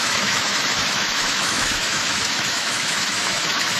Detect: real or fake fake